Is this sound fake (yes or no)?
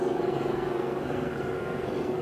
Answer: yes